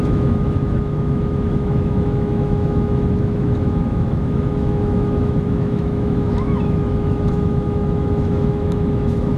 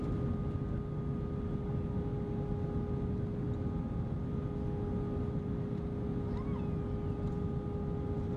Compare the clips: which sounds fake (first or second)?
first